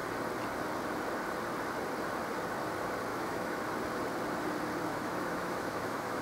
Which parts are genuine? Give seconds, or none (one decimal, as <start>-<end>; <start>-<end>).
0.0-3.1; 3.6-4.9

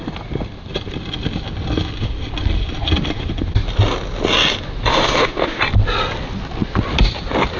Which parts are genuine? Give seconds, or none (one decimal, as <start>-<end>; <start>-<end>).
0.0-4.9; 5.6-7.6

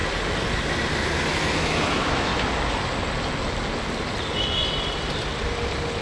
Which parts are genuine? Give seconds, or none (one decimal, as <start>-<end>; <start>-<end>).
0.0-1.6; 2.3-6.0

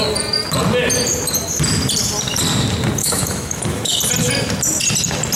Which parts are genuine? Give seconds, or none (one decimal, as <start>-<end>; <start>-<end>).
0.0-3.0; 4.0-5.3